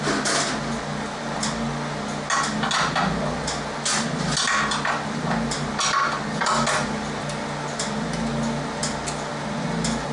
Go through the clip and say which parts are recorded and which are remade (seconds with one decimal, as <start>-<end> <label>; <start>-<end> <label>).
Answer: 0.0-10.1 recorded